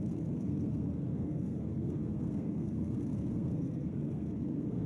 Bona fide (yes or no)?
no